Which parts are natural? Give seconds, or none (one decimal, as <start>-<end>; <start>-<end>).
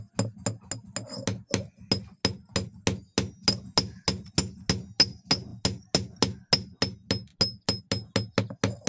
0.0-8.9